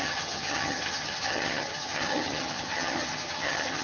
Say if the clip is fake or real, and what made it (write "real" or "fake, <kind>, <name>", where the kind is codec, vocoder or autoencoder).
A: fake, vocoder, HiFi-GAN